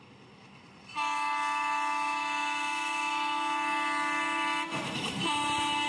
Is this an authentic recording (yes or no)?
yes